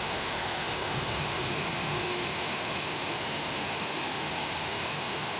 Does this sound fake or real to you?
fake